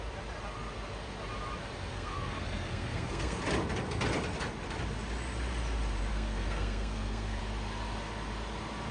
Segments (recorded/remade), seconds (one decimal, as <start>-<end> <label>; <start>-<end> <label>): 0.0-1.9 recorded; 1.9-3.4 remade; 3.4-6.1 recorded; 6.1-7.4 remade; 7.4-8.9 recorded